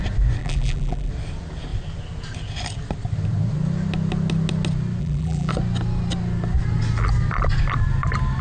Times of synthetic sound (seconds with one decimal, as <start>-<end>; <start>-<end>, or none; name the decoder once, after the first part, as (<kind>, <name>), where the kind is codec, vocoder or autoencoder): 0.4-1.1 (vocoder, BigVGAN v2); 5.0-5.5